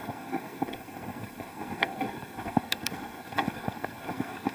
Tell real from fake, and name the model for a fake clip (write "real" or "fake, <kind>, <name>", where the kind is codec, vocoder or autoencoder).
fake, codec, SNAC